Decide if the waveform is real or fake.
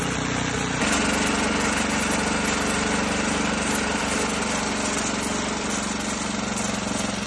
real